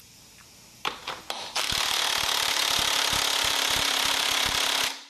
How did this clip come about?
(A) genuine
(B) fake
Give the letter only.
B